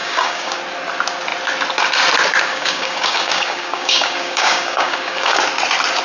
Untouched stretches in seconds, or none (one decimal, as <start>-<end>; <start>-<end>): 0.6-2.5; 5.4-6.0